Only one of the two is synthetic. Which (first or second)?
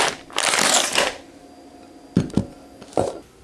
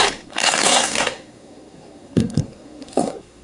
second